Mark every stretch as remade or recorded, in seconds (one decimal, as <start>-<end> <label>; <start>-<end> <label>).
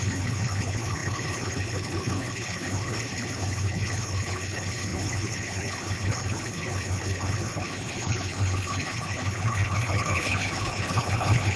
0.0-11.6 remade